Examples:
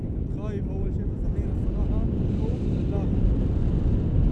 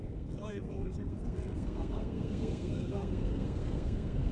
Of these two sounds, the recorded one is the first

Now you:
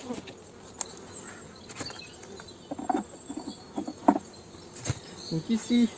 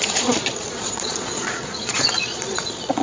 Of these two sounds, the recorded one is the first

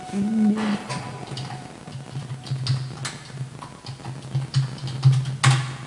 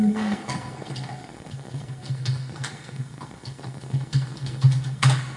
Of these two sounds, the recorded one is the first